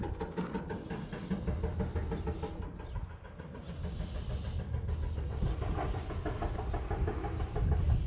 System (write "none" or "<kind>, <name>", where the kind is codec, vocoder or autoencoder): none